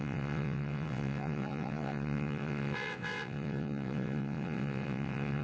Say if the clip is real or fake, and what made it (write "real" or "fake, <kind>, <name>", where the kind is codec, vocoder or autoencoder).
fake, vocoder, WaveNeXt